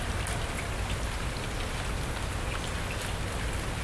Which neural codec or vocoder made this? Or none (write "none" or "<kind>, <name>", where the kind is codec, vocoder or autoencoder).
none